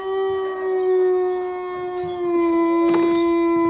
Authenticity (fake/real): real